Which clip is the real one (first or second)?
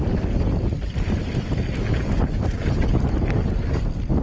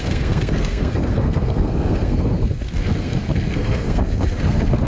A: first